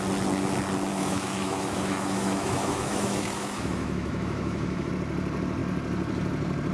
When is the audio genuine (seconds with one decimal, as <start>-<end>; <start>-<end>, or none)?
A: 0.0-0.9; 4.9-6.7